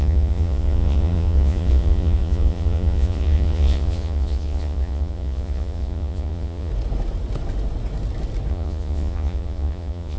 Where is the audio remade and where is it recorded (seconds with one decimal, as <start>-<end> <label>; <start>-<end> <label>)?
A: 0.0-6.7 remade; 6.7-8.5 recorded; 8.5-10.2 remade